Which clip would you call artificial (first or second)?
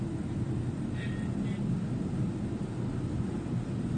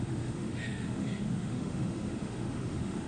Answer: second